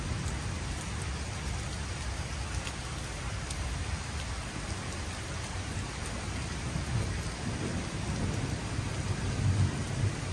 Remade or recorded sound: recorded